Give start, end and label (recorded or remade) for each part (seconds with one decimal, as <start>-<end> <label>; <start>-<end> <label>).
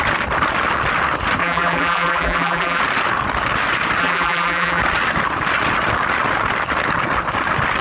0.0-1.4 recorded; 1.4-2.8 remade; 2.8-4.0 recorded; 4.0-4.8 remade; 4.8-7.8 recorded